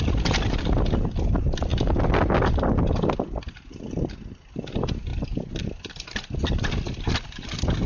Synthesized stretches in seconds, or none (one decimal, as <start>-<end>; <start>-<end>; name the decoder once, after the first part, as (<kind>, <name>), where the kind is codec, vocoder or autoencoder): none